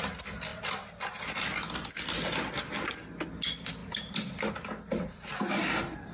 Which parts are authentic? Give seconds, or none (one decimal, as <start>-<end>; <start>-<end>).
0.0-6.1